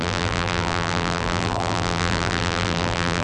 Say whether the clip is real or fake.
fake